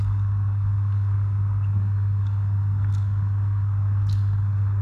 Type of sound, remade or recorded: remade